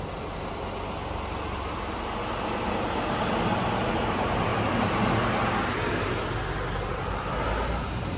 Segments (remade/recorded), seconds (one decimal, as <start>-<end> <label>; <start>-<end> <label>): 0.0-8.2 recorded